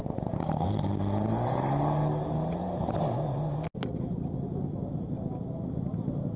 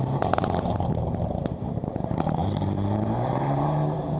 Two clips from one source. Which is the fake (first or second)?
second